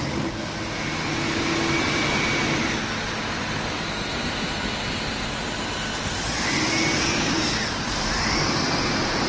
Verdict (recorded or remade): recorded